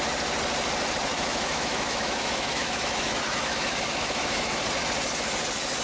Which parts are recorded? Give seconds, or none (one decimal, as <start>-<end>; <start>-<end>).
0.0-1.1; 4.6-5.8